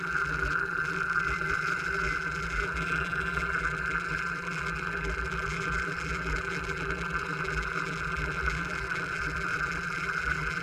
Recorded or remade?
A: remade